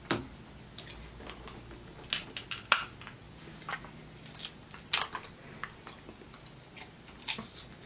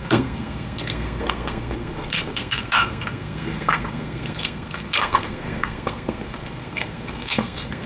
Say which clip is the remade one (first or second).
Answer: second